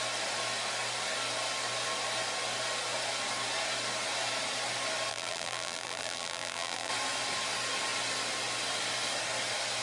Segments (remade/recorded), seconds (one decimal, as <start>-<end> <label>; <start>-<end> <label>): 0.0-5.1 recorded; 5.1-6.9 remade; 6.9-9.8 recorded